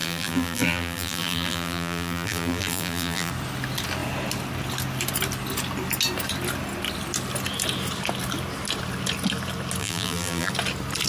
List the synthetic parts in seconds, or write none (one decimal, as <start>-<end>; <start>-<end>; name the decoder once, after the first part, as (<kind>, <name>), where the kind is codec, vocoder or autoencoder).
0.0-3.3 (vocoder, BigVGAN v2); 9.8-10.5